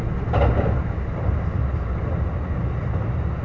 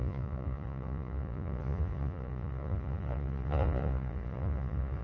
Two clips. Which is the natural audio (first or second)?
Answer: first